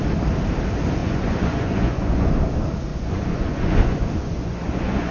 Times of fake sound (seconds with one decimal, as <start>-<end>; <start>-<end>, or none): 1.0-2.3; 2.9-5.1